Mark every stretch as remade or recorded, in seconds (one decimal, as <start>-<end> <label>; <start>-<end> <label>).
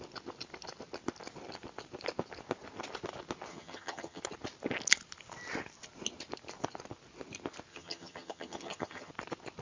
0.0-3.5 recorded; 3.5-4.2 remade; 4.2-7.7 recorded; 7.7-9.1 remade; 9.1-9.6 recorded